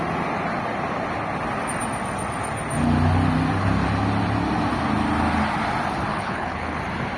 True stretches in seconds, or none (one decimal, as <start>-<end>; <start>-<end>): 0.0-6.1; 6.8-7.2